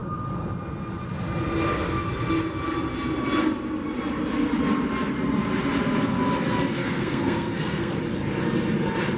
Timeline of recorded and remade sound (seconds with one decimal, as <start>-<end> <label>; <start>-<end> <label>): 0.0-6.8 recorded; 6.8-8.0 remade; 8.0-9.2 recorded